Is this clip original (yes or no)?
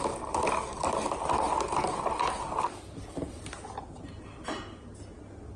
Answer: yes